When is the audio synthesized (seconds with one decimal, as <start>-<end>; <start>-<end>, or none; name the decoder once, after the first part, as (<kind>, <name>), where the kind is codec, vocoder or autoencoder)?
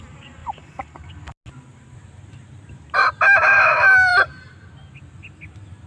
0.4-1.1 (vocoder, BigVGAN v2); 1.7-3.1